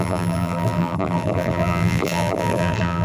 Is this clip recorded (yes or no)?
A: no